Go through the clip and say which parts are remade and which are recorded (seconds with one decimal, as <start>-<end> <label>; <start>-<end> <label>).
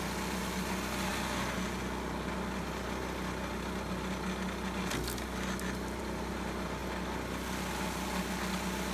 0.0-8.9 recorded